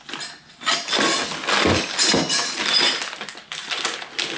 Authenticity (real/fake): real